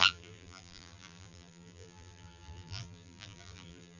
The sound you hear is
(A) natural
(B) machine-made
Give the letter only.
B